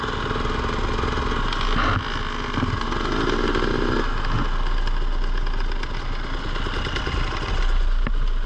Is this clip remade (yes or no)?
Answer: no